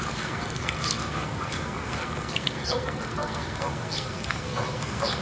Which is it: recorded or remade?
remade